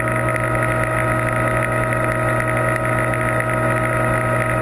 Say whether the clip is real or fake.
real